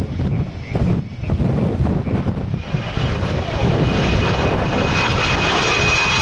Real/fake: real